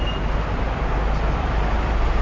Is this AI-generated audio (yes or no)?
no